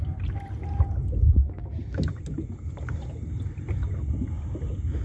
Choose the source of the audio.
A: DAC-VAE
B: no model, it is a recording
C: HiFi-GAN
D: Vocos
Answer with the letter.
B